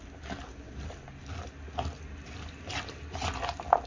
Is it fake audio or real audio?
real